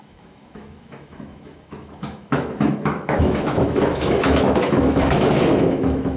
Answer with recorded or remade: remade